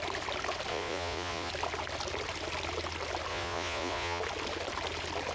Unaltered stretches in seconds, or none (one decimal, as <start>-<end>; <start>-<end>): 0.0-0.7; 1.5-3.3; 4.2-5.3